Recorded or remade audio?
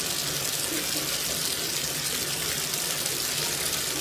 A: recorded